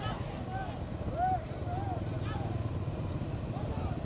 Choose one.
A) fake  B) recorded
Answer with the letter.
B